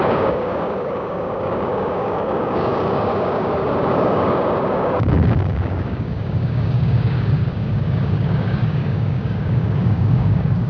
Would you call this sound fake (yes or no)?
yes